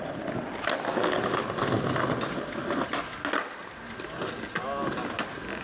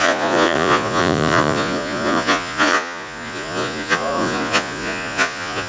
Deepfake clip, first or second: second